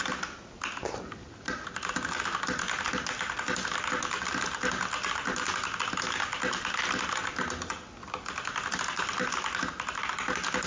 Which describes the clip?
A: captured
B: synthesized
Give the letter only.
A